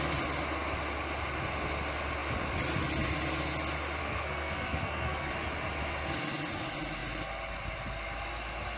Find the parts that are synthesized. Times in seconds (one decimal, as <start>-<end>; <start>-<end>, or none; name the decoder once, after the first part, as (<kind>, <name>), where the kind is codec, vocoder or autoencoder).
4.0-5.3 (codec, SNAC)